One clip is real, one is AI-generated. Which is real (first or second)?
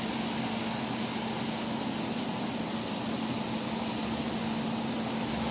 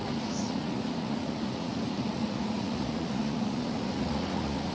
first